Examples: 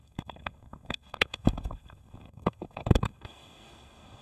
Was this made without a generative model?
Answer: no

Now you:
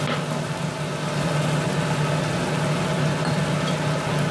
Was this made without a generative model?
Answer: yes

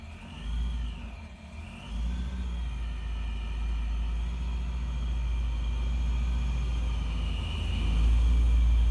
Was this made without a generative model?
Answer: yes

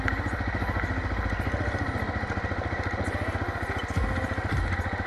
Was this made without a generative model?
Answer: yes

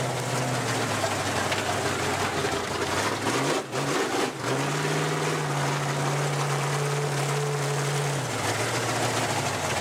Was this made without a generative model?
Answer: yes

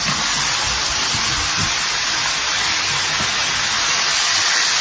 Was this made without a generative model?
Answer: yes